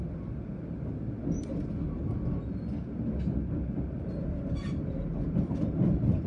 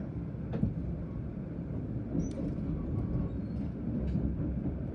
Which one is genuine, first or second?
first